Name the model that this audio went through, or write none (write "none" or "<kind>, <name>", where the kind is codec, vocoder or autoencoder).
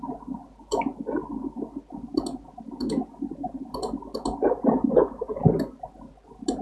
none